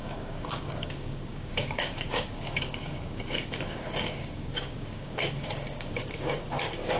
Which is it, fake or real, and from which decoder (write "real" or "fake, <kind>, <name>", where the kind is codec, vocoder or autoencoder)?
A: fake, codec, DAC